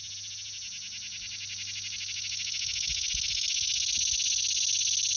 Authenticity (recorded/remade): recorded